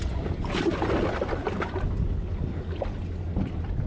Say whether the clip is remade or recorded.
recorded